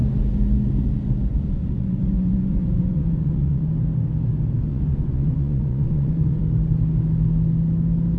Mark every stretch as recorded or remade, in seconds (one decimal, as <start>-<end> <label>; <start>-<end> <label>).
0.0-1.3 recorded; 1.3-3.7 remade; 3.7-4.7 recorded; 4.7-6.4 remade; 6.4-8.2 recorded